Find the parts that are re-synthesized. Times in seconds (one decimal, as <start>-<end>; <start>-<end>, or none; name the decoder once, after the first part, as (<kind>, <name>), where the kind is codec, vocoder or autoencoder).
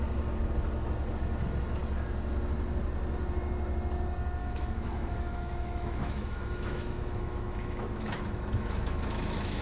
4.4-9.6 (autoencoder, DAC-VAE)